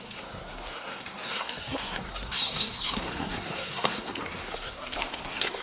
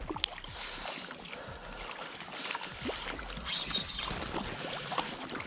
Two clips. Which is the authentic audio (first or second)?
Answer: second